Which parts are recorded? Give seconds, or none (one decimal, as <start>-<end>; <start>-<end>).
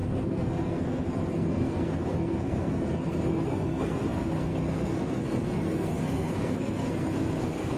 none